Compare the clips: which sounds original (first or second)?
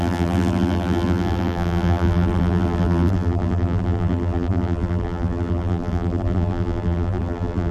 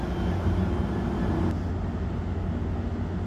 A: second